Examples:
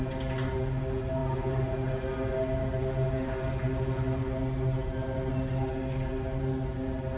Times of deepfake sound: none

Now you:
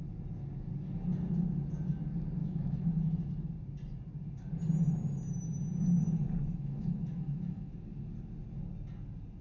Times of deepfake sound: 2.4-2.9 (autoencoder, DAC-VAE); 6.4-7.7